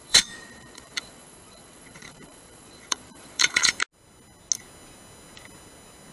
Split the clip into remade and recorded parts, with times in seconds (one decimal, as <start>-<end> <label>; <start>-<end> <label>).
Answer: 0.0-3.7 remade; 3.7-6.1 recorded